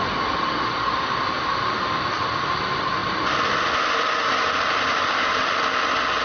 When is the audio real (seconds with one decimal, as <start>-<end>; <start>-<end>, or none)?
0.0-6.2